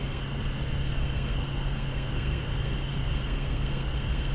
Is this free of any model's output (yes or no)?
no